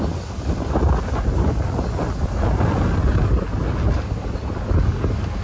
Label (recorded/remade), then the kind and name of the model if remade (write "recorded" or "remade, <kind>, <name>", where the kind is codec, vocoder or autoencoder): recorded